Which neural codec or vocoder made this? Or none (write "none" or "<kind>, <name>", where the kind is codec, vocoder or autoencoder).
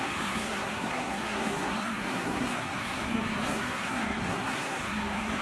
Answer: codec, SNAC